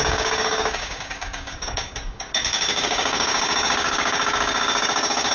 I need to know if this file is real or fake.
fake